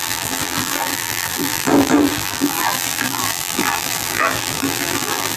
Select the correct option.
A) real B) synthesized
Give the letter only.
B